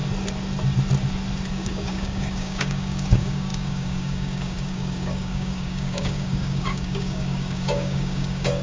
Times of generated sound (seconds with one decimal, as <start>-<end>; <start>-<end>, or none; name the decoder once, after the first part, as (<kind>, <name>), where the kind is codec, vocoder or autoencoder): 1.5-8.6 (codec, DAC)